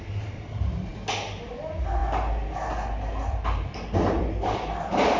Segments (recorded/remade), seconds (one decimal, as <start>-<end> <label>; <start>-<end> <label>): 0.0-5.2 recorded